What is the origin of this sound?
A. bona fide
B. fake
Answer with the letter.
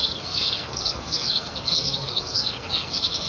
B